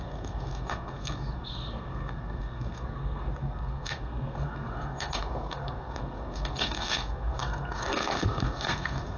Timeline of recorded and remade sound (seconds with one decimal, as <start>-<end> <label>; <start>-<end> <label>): 0.0-9.2 remade